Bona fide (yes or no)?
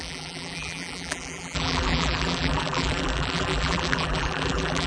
no